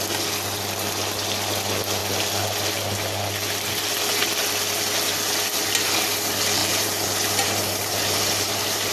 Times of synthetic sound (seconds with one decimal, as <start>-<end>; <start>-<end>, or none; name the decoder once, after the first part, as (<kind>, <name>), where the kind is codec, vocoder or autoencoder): 6.6-8.9 (vocoder, BigVGAN v2)